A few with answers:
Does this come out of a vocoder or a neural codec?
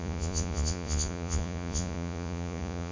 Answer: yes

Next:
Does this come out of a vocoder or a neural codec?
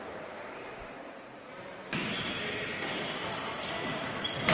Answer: no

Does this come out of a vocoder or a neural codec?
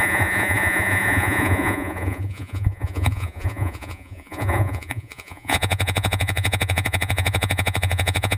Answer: yes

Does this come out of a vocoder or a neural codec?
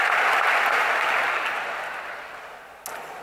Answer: no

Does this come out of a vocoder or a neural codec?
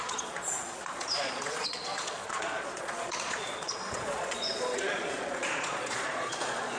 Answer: yes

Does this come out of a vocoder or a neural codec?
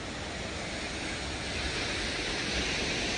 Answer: no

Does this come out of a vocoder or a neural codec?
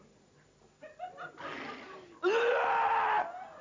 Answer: no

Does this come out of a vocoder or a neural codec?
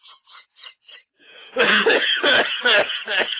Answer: yes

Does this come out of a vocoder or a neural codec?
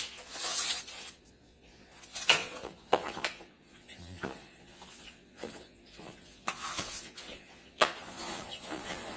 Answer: yes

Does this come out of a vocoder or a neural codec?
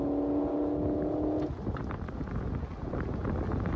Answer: no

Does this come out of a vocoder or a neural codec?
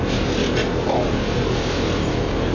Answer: no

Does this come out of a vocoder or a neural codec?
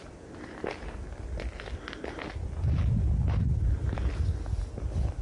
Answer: no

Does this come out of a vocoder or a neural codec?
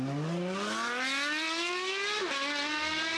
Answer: no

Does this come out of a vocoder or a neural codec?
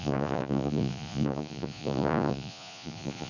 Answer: yes